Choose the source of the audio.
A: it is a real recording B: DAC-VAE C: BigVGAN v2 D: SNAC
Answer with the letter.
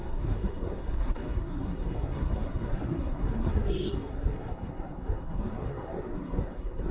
D